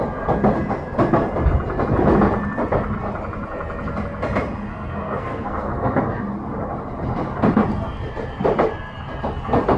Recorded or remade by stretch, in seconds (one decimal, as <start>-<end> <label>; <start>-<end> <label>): 0.0-4.7 recorded; 4.7-6.0 remade; 6.0-9.8 recorded